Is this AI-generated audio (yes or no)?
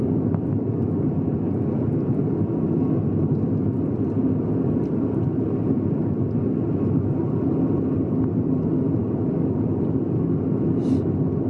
no